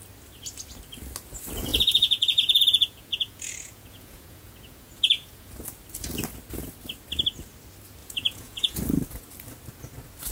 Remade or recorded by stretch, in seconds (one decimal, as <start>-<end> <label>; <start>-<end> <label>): 0.0-1.7 recorded; 1.7-5.5 remade; 5.5-8.0 recorded; 8.0-8.8 remade; 8.8-10.3 recorded